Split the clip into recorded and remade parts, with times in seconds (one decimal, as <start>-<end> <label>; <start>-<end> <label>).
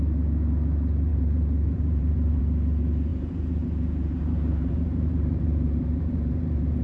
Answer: 0.0-1.1 recorded; 1.1-2.4 remade; 2.4-3.1 recorded; 3.1-6.8 remade